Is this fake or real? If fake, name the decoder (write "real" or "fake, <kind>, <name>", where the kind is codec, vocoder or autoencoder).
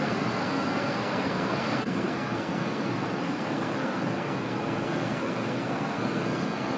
fake, codec, SNAC